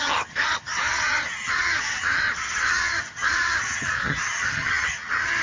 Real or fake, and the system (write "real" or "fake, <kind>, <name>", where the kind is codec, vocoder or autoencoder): fake, vocoder, HiFi-GAN